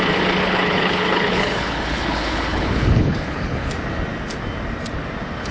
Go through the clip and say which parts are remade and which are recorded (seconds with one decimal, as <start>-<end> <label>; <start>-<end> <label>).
0.0-0.4 recorded; 0.4-3.7 remade; 3.7-5.5 recorded